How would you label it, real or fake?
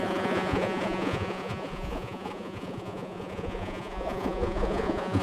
fake